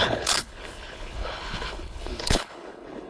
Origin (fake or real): fake